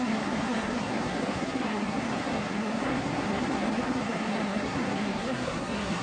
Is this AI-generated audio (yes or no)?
yes